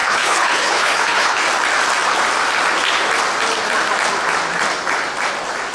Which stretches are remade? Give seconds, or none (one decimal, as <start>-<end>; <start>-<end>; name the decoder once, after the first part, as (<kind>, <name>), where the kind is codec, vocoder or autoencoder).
0.0-1.4 (codec, HILCodec)

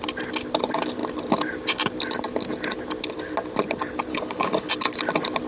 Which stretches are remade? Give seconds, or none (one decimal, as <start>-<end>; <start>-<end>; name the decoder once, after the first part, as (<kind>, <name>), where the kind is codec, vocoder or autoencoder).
4.1-4.7 (codec, HILCodec)

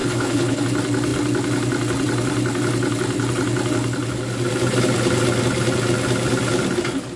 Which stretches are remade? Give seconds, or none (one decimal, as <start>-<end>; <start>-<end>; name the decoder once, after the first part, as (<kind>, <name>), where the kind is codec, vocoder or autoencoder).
0.0-0.6 (codec, HILCodec)